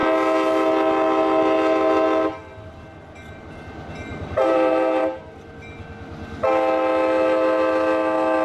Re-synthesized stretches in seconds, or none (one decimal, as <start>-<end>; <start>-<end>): 4.1-5.2